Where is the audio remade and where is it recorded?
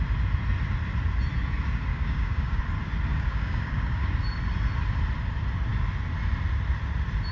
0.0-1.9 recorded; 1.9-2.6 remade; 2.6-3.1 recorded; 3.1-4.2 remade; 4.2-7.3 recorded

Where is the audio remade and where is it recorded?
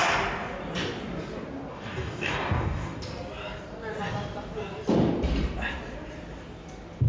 0.0-1.7 recorded; 1.7-3.0 remade; 3.0-7.1 recorded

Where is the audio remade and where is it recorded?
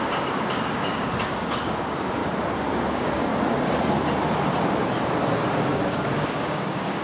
0.0-2.2 remade; 2.2-2.7 recorded; 2.7-3.3 remade; 3.3-5.7 recorded; 5.7-7.0 remade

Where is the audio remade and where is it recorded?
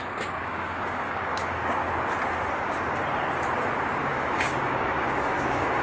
0.0-1.8 remade; 1.8-2.5 recorded; 2.5-3.0 remade; 3.0-4.1 recorded; 4.1-5.8 remade